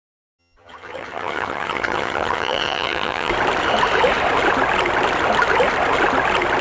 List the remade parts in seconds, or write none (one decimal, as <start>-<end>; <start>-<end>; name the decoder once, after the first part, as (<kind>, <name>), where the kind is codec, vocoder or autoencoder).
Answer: 0.4-3.3 (vocoder, HiFi-GAN)